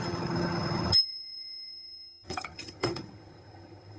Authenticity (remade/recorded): remade